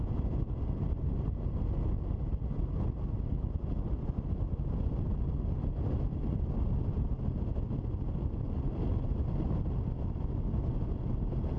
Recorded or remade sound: recorded